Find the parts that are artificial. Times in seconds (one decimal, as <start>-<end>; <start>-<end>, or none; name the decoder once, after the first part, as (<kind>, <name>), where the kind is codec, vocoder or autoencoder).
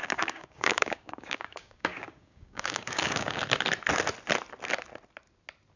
0.0-3.4 (codec, DAC)